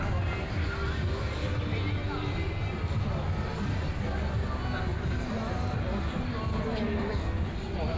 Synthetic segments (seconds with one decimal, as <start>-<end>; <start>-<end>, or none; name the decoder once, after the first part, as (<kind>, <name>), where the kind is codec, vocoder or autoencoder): none